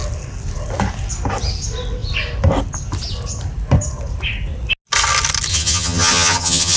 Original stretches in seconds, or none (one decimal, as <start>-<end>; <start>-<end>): 0.0-5.5